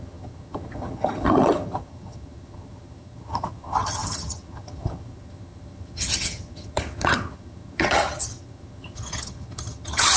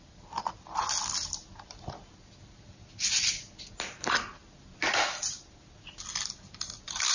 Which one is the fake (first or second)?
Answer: first